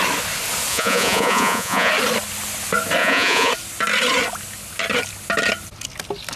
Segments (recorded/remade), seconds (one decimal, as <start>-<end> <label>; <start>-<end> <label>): 0.0-0.7 recorded; 0.7-1.9 remade; 1.9-3.0 recorded; 3.0-3.5 remade; 3.5-6.4 recorded